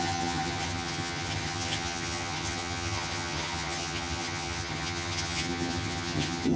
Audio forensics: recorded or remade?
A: remade